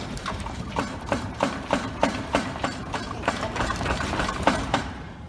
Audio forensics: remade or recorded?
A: remade